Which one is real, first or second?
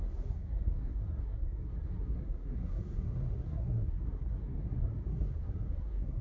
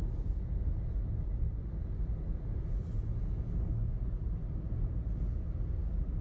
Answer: second